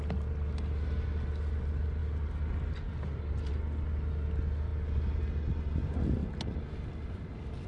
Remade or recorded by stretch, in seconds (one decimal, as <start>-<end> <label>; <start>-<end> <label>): 0.0-7.7 recorded